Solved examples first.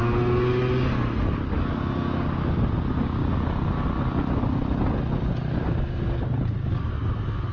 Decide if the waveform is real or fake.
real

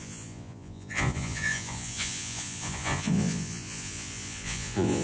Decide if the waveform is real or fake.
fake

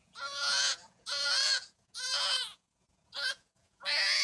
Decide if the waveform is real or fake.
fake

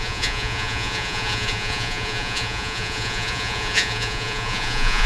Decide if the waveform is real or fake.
fake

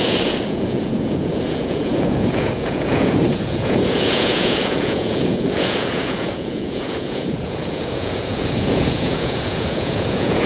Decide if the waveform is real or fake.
fake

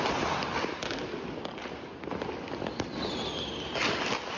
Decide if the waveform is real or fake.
real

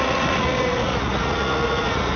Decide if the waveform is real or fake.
fake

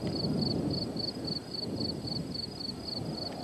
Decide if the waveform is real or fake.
real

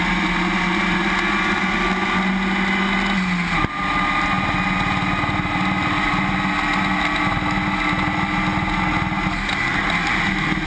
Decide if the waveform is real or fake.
real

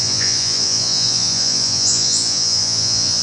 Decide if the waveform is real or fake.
fake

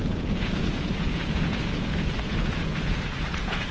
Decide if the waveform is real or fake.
fake